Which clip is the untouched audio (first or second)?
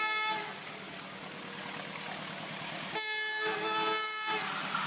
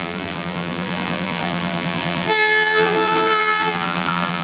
first